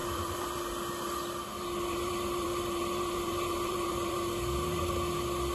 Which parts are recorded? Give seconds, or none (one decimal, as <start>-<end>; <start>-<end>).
0.6-1.5; 4.8-5.5